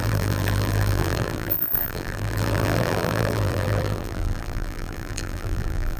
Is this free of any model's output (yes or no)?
no